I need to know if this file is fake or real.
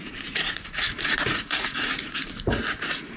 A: fake